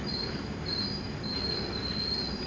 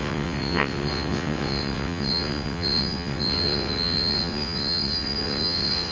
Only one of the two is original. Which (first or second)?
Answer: first